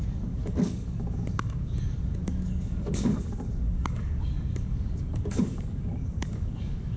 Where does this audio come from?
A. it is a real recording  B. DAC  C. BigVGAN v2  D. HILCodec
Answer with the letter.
B